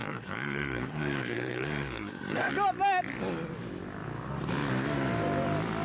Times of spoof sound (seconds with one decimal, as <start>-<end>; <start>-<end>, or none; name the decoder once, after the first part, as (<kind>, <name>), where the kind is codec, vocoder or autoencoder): 0.0-2.5 (codec, SNAC)